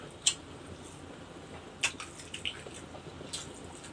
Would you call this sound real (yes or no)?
yes